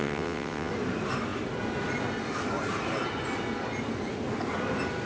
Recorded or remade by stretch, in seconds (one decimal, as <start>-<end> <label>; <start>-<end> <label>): 0.0-0.7 remade; 0.7-5.1 recorded